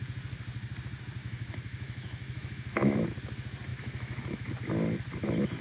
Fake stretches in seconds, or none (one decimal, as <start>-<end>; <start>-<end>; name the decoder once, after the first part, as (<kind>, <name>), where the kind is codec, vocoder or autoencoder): 1.2-2.9 (autoencoder, DAC-VAE); 3.7-4.5